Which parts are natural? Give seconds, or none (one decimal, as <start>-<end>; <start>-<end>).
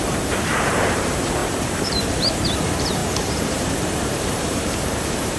none